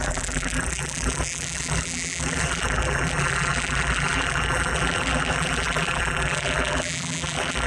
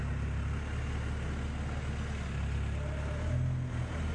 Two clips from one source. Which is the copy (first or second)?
first